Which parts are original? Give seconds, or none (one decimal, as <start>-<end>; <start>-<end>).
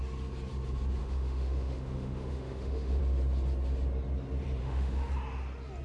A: 0.0-1.0; 3.0-4.6; 5.1-5.8